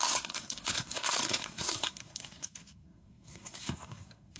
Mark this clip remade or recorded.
remade